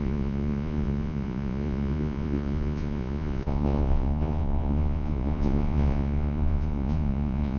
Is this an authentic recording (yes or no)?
no